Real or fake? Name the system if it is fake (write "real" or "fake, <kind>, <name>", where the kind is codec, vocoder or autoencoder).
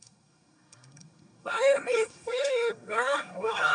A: fake, codec, SNAC